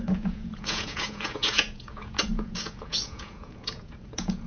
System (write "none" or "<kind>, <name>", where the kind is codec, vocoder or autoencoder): vocoder, Vocos